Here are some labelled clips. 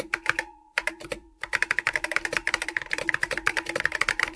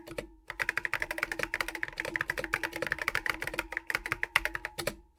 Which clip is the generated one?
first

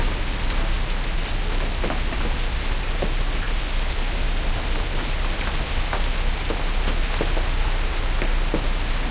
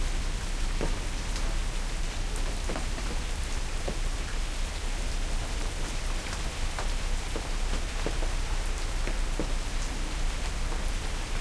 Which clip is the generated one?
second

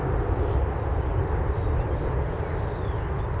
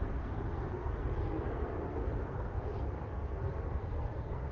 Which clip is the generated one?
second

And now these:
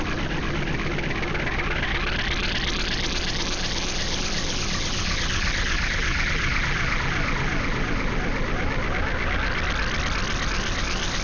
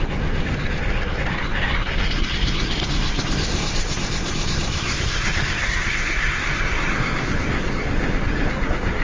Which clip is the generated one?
second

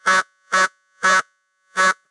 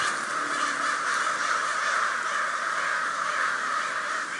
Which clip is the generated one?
first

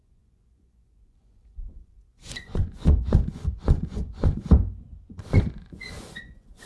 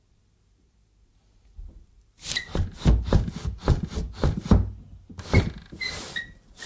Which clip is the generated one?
first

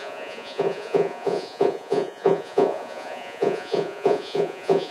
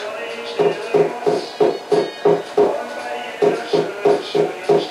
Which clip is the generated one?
first